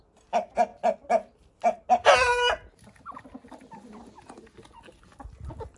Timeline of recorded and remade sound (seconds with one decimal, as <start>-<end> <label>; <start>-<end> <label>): 0.0-5.8 recorded